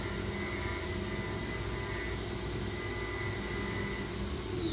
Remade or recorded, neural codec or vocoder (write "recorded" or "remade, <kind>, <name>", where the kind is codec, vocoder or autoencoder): recorded